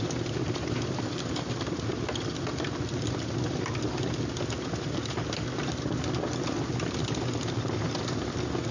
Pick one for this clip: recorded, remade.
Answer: recorded